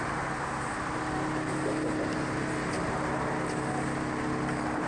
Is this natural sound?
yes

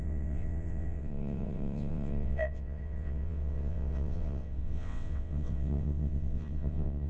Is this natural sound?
no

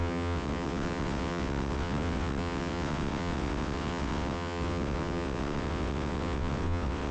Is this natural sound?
no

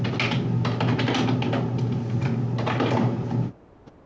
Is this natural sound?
yes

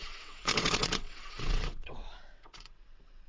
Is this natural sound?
no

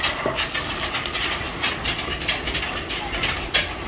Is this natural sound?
yes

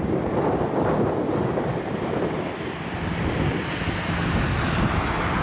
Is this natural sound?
yes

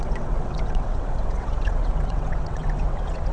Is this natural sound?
no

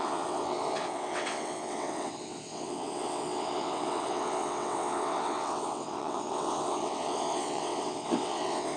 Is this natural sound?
no